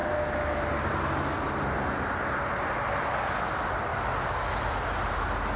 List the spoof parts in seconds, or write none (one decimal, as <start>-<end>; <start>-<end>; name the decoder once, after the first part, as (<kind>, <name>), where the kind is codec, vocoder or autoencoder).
none